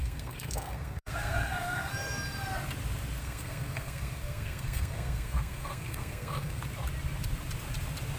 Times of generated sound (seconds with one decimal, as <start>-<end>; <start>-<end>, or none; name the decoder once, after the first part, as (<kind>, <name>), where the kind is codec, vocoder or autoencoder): 0.0-1.9 (codec, SNAC); 3.2-6.6